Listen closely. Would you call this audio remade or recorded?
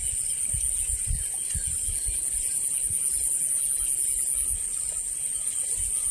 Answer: recorded